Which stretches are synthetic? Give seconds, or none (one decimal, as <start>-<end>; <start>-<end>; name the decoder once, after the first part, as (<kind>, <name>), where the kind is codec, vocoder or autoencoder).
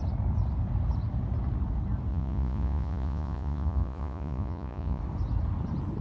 2.1-5.0 (vocoder, Vocos)